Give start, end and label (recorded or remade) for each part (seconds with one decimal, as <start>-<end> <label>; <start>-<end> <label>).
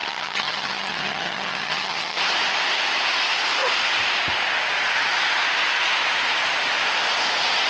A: 0.0-2.2 remade; 2.2-7.7 recorded